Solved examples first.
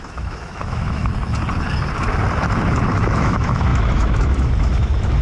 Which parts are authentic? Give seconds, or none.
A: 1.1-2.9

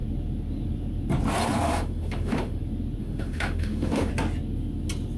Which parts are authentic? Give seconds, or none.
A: 0.0-1.7; 2.6-3.0; 4.1-5.2

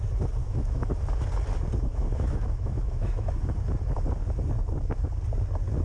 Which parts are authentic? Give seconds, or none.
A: 0.0-0.4; 0.9-1.9; 3.3-5.8

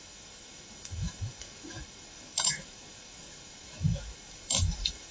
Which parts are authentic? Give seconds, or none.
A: none